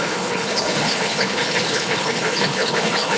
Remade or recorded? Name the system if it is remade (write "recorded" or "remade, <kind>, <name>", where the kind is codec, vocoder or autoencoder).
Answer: remade, codec, HILCodec